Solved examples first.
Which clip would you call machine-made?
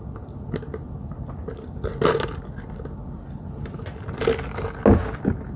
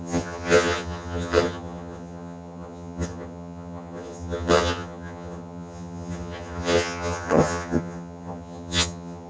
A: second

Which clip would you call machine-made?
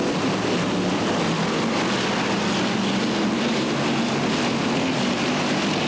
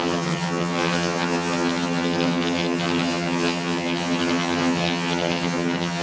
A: second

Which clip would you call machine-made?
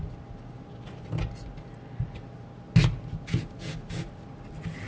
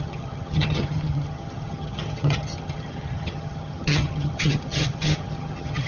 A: second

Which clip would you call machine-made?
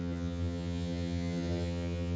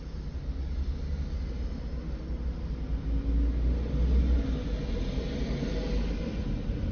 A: first